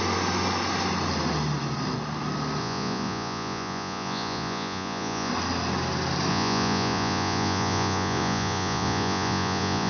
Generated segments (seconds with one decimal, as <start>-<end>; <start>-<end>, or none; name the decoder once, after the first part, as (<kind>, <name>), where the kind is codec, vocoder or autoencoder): 2.6-5.3 (vocoder, Vocos); 6.3-9.9